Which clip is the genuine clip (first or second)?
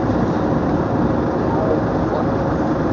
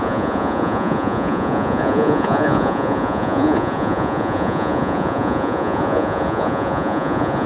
first